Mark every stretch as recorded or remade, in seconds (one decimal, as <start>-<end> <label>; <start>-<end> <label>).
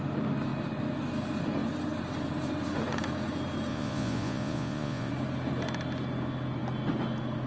0.0-3.7 recorded; 3.7-5.1 remade; 5.1-7.5 recorded